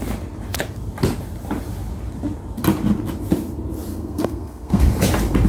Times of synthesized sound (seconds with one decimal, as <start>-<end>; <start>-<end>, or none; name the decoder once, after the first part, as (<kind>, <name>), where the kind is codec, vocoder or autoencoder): 3.9-4.9 (codec, SNAC)